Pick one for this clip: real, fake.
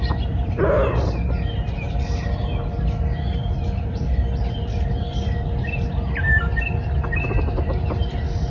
real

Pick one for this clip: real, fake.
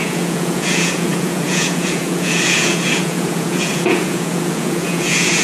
fake